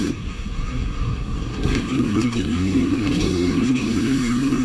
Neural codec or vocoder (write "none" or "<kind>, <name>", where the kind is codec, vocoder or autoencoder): codec, SNAC